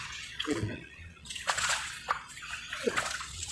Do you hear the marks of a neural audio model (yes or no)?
yes